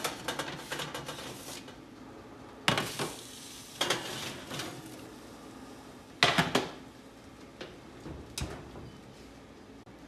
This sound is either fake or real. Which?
real